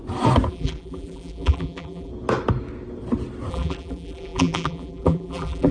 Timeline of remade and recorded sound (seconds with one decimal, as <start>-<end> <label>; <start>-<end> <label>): 0.0-0.5 recorded; 0.5-2.1 remade; 2.1-3.5 recorded; 3.5-5.7 remade